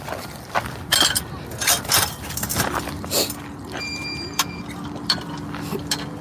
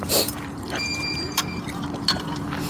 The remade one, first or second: second